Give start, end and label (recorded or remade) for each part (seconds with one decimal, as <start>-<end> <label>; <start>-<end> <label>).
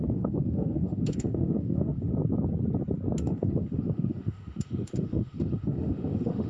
0.0-2.1 remade; 2.1-3.2 recorded; 3.2-6.5 remade